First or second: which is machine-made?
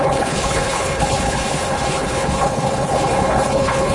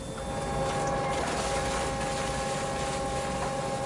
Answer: first